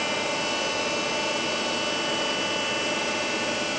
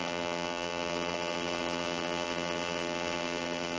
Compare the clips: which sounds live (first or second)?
first